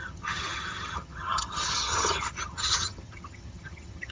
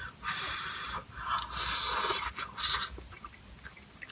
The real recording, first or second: second